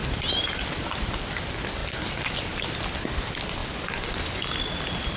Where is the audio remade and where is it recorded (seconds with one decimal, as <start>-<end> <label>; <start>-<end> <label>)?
0.0-0.9 recorded; 0.9-1.8 remade; 1.8-2.6 recorded; 2.6-5.2 remade